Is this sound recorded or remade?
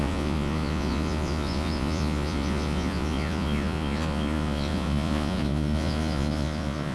remade